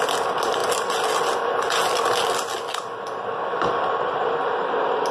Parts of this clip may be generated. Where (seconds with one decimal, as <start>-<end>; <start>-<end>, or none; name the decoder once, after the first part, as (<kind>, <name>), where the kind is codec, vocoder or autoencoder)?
none

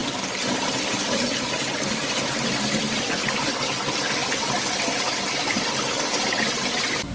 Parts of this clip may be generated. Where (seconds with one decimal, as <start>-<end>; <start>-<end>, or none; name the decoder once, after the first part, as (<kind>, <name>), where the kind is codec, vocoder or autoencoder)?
none

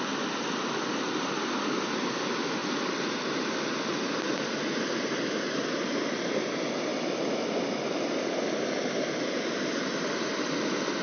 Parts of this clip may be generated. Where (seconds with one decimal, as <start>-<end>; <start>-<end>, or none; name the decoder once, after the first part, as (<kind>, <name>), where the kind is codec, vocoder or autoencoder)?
2.6-5.2 (vocoder, BigVGAN v2)

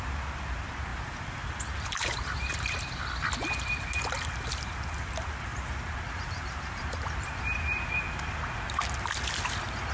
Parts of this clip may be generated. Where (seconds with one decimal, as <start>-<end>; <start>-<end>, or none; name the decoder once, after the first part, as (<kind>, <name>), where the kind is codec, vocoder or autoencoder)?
0.9-3.0 (vocoder, BigVGAN v2); 5.5-7.6